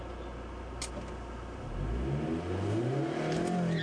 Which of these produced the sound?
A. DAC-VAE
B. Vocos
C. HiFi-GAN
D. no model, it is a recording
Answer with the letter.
D